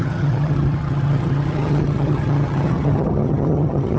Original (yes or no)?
no